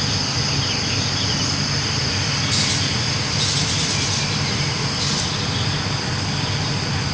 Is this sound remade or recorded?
recorded